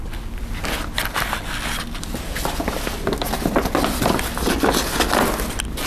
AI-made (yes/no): no